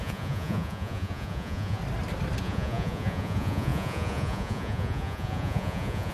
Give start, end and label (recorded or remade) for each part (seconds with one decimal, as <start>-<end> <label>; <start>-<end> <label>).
0.0-1.8 remade; 1.8-2.4 recorded; 2.4-6.1 remade